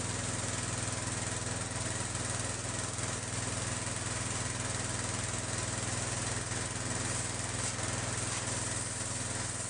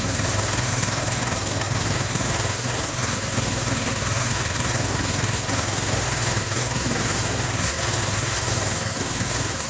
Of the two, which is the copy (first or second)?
second